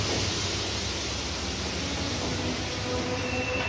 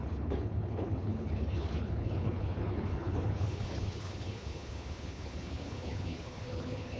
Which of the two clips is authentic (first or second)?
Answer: first